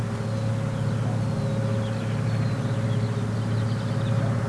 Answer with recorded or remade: recorded